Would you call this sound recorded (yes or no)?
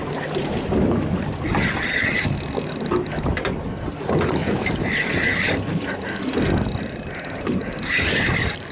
yes